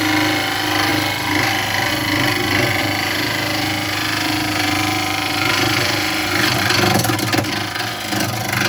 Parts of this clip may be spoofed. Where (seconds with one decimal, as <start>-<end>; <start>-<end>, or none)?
2.8-6.6

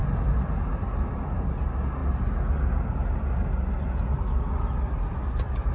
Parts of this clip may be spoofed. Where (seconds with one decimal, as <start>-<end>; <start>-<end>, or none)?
none

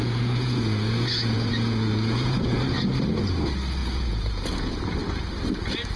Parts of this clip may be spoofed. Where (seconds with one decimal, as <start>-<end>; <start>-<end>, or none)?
0.0-2.6; 3.8-4.7

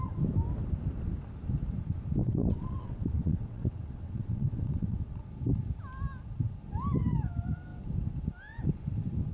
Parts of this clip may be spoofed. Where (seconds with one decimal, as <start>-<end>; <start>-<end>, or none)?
2.2-5.3

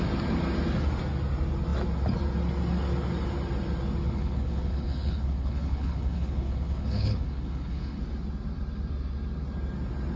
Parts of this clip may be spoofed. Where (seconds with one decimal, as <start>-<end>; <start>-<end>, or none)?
4.0-8.0